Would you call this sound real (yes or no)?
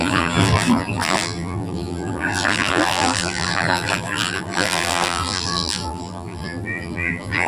no